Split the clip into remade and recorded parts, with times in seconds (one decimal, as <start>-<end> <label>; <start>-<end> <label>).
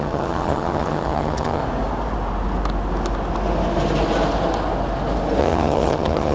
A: 0.0-1.6 remade; 1.6-5.4 recorded; 5.4-6.3 remade